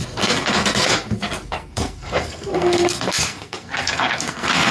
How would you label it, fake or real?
fake